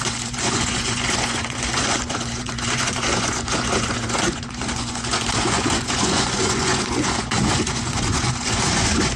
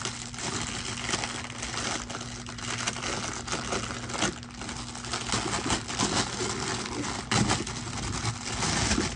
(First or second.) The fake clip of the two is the first